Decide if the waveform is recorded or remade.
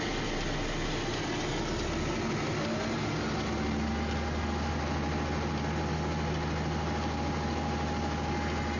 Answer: recorded